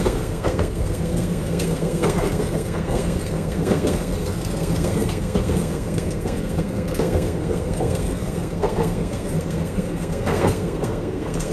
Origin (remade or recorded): remade